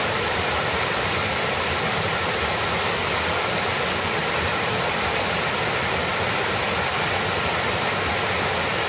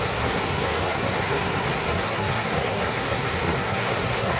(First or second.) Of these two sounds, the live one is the first